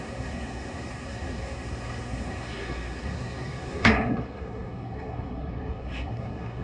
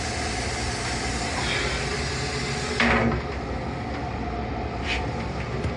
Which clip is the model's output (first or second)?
first